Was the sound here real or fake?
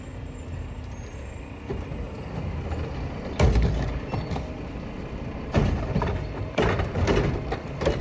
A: real